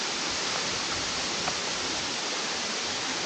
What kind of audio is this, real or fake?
real